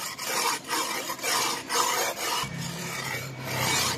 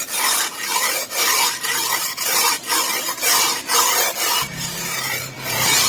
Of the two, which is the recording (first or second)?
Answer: first